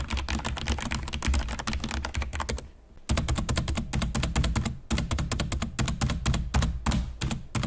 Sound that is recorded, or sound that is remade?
recorded